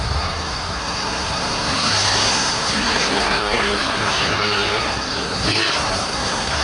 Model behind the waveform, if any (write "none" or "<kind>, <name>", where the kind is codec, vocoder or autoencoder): codec, SNAC